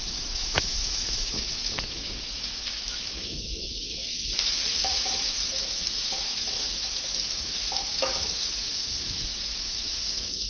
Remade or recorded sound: remade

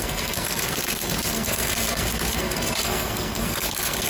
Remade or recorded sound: remade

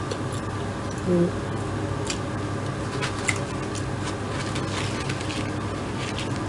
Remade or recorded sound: recorded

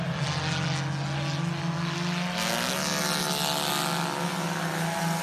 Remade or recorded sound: recorded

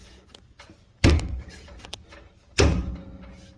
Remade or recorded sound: recorded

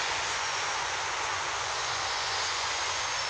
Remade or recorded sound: remade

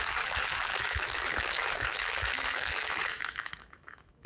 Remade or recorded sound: remade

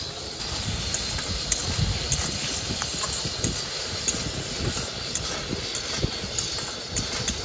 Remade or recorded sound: recorded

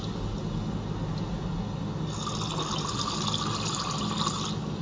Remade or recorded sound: recorded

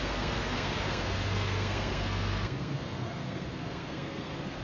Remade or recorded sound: remade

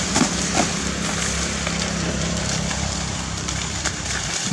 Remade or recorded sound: remade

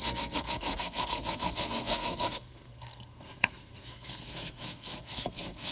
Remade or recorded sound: remade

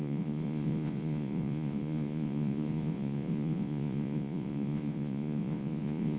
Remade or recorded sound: remade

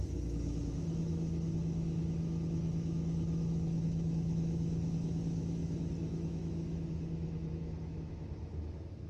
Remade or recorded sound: remade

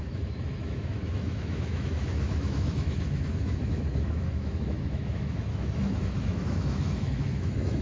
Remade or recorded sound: remade